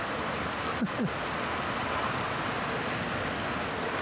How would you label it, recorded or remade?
recorded